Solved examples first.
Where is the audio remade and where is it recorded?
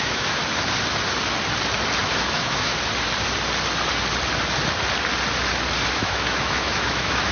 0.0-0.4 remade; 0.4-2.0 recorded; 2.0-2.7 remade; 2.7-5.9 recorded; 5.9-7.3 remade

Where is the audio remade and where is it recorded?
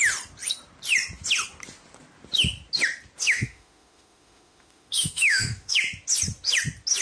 0.0-3.2 recorded; 3.2-5.8 remade; 5.8-7.0 recorded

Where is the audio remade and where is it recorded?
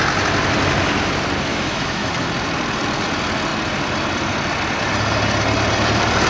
0.0-1.5 recorded; 1.5-2.1 remade; 2.1-6.3 recorded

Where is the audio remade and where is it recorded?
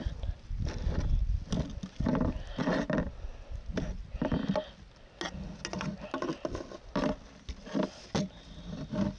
0.0-9.2 recorded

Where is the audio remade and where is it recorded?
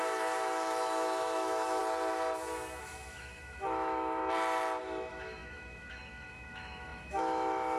0.0-1.8 remade; 1.8-2.8 recorded; 2.8-4.2 remade; 4.2-4.8 recorded; 4.8-7.8 remade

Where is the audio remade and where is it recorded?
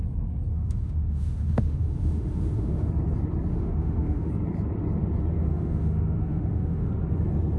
0.0-0.5 recorded; 0.5-2.9 remade; 2.9-3.5 recorded; 3.5-4.3 remade; 4.3-5.5 recorded; 5.5-6.9 remade; 6.9-7.6 recorded